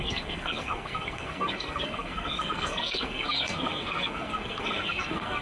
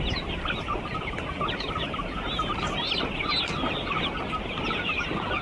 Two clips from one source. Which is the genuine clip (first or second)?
second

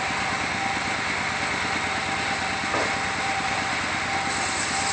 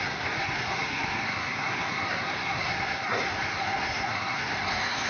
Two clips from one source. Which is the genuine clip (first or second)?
first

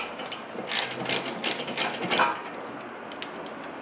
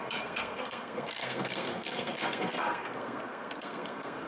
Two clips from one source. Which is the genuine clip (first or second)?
first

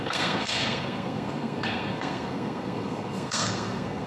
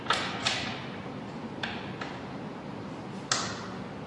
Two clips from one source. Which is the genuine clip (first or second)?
second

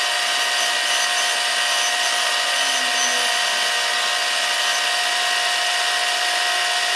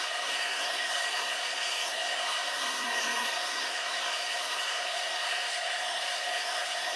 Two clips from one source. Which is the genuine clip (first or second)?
first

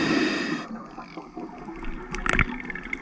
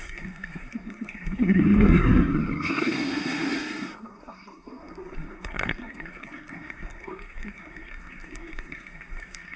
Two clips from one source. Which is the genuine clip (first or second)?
first